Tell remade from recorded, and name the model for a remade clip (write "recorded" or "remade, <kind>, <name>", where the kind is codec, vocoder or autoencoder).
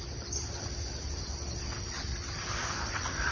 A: recorded